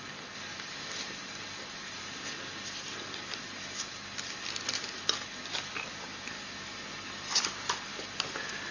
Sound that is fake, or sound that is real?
real